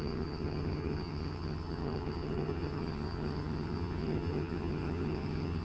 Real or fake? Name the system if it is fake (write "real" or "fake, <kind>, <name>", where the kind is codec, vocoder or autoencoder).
fake, vocoder, HiFi-GAN